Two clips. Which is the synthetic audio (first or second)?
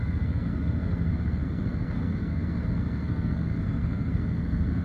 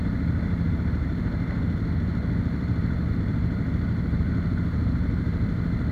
first